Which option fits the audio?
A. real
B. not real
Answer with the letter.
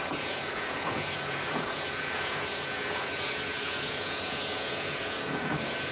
B